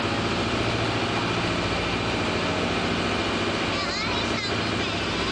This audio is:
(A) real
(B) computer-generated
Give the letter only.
A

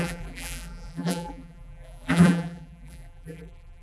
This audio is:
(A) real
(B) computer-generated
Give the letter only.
B